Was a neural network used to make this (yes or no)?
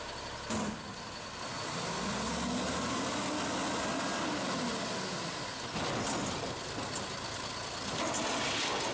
no